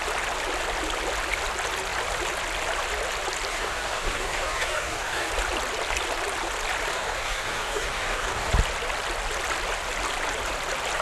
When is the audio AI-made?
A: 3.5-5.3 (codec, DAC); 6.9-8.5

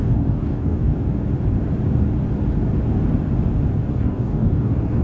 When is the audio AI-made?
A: 0.0-0.9 (codec, DAC); 3.9-5.0

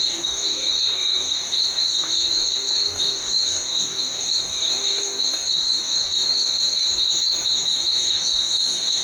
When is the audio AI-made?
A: 0.0-9.0 (codec, DAC)

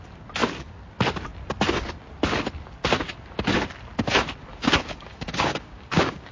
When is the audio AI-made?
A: 4.5-6.3 (codec, DAC)

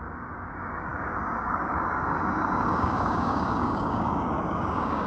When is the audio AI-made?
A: 0.0-5.1 (codec, DAC)

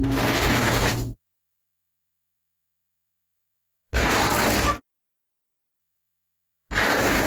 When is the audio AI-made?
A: 0.0-4.2 (codec, DAC); 5.8-7.3